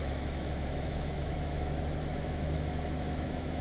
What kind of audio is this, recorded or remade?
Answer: remade